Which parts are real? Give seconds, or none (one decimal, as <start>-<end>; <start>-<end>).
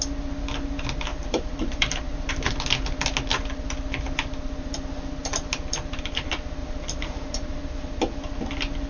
0.0-1.1; 2.3-6.6; 7.6-8.9